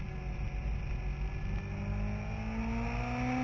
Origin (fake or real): real